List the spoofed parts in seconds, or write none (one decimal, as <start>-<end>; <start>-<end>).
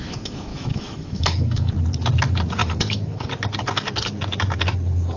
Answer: 0.5-1.7; 2.6-3.3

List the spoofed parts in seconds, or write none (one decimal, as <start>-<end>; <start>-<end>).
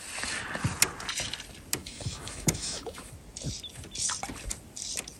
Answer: 1.8-3.1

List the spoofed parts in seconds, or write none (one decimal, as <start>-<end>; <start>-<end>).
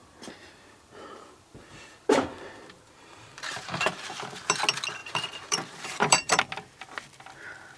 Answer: 0.0-3.9; 5.0-6.4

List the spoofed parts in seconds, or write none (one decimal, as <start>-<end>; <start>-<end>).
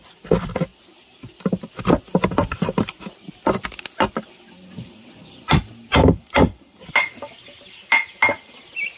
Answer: none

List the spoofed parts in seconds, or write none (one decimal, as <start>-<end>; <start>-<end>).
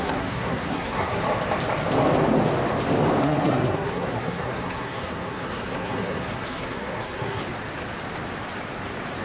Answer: 0.0-1.2; 3.2-7.4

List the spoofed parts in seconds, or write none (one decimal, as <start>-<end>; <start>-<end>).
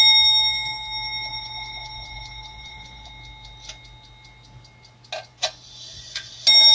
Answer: 1.3-3.1; 5.3-6.3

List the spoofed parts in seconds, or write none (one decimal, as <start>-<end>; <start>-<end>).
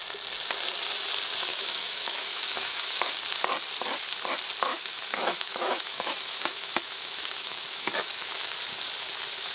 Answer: 1.5-3.1; 4.7-8.5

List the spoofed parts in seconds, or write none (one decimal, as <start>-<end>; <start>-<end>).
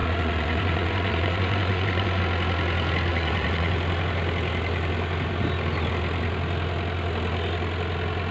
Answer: 0.0-2.2; 3.1-3.7